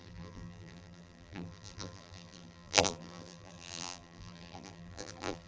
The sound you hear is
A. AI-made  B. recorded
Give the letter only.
A